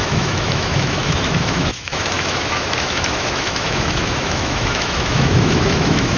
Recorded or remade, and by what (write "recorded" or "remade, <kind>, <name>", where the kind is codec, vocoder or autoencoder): remade, autoencoder, DAC-VAE